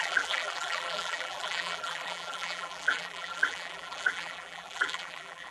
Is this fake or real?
fake